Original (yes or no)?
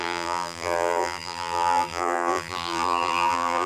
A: no